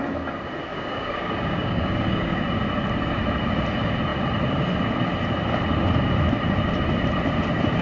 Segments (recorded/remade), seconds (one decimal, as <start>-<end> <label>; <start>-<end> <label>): 0.0-0.7 recorded; 0.7-2.4 remade; 2.4-7.8 recorded